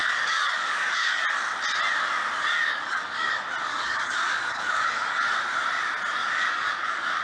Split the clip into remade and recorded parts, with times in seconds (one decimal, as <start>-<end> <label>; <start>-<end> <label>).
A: 0.0-1.2 remade; 1.2-2.5 recorded; 2.5-3.3 remade; 3.3-3.7 recorded; 3.7-5.3 remade; 5.3-6.2 recorded; 6.2-7.2 remade